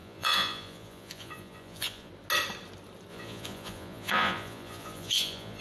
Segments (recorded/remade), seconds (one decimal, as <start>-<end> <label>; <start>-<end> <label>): 0.0-2.1 remade; 2.1-3.1 recorded; 3.1-5.6 remade